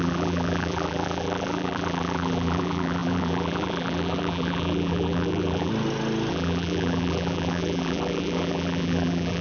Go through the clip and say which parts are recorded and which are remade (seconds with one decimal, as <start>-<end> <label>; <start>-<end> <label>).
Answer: 0.0-5.7 remade; 5.7-6.3 recorded; 6.3-9.4 remade